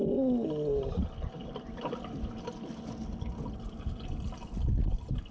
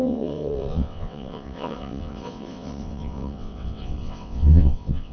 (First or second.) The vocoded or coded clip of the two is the second